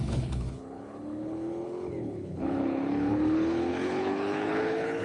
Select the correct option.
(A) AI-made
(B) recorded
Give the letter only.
A